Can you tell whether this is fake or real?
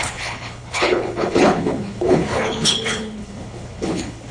fake